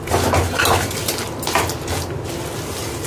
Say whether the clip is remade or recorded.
recorded